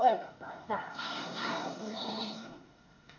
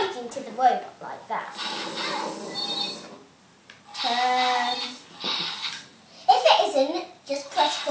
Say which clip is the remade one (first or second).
first